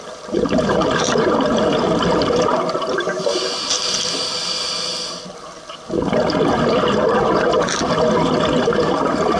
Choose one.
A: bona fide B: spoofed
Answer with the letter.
A